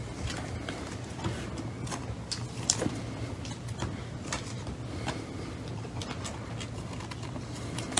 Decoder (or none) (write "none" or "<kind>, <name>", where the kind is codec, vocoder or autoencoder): none